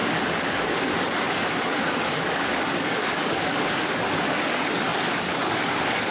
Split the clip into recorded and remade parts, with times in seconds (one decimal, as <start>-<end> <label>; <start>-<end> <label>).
0.0-6.1 remade